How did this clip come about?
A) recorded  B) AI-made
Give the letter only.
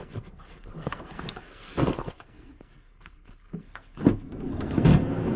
B